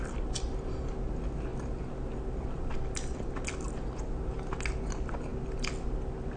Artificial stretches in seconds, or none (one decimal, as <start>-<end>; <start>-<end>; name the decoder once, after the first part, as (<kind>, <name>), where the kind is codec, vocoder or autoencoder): none